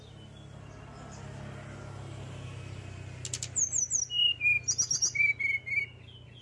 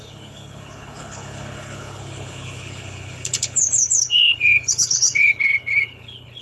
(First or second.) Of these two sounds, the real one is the first